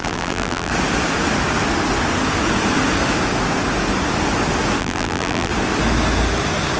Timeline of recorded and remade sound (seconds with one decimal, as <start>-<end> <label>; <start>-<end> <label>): 0.0-0.7 remade; 0.7-4.8 recorded; 4.8-5.5 remade; 5.5-6.8 recorded